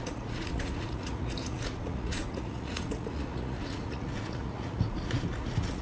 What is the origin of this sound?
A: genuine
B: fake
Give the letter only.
B